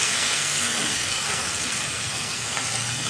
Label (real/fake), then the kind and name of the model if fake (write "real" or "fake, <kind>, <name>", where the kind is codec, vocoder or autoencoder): fake, codec, SNAC